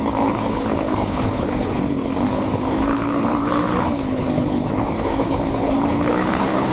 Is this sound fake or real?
fake